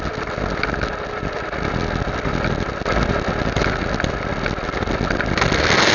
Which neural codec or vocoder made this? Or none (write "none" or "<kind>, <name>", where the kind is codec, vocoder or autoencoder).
none